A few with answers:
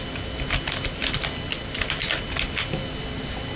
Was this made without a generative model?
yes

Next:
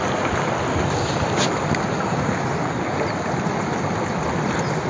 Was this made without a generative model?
yes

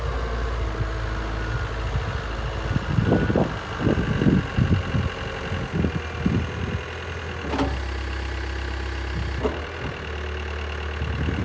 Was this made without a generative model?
yes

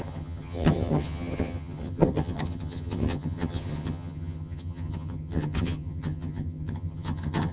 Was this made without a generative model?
no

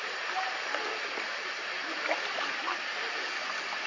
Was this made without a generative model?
yes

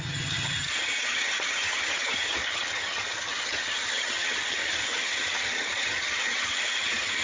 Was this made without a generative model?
no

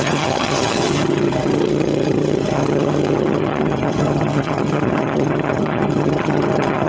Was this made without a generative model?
no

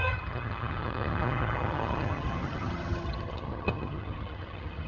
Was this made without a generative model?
no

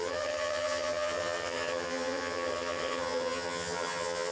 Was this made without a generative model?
no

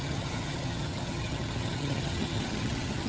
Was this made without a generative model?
no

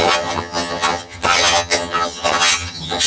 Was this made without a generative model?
no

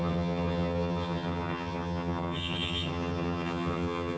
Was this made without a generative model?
no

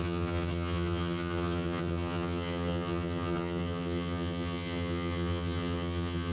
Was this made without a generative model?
no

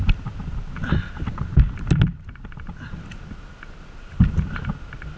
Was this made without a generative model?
yes